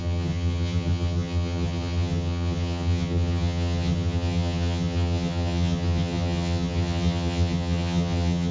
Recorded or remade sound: remade